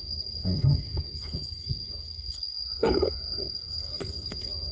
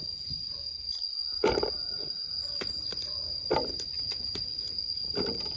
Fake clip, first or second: first